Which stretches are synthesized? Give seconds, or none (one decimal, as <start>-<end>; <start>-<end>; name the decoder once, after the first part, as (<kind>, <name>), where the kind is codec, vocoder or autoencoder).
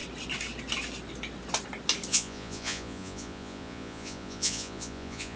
2.1-5.4 (vocoder, Vocos)